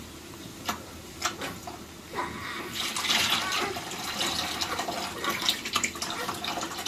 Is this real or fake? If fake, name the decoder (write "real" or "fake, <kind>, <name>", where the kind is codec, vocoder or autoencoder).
real